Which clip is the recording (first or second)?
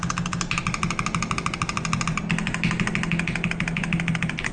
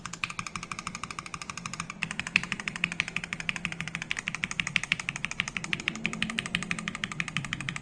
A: first